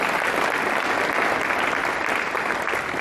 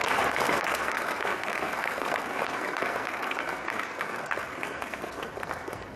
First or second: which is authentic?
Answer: first